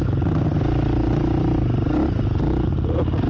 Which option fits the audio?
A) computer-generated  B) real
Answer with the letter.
B